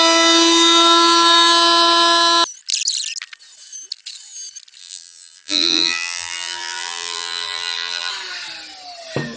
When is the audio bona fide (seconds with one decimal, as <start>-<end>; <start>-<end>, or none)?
0.0-4.8; 8.1-9.4